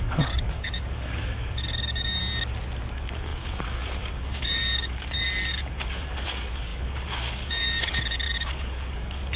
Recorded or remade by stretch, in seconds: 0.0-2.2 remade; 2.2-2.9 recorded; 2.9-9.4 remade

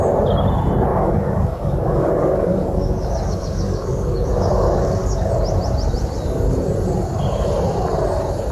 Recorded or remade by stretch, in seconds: 0.0-0.9 recorded; 0.9-5.3 remade; 5.3-8.5 recorded